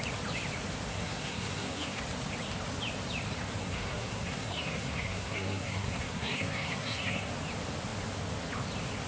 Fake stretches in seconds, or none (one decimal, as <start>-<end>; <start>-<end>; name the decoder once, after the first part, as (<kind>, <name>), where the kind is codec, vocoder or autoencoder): 0.9-2.0 (codec, SNAC); 3.6-7.3